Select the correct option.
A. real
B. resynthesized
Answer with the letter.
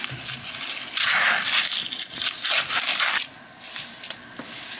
A